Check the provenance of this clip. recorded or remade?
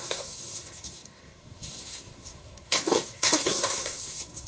remade